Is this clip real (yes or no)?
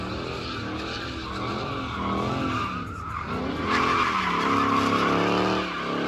yes